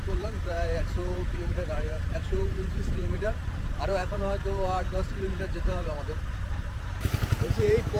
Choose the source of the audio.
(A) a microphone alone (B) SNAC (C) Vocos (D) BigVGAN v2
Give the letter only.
D